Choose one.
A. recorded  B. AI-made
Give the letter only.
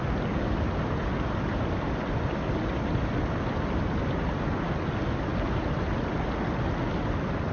A